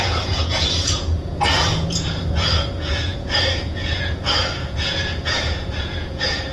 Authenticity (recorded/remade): remade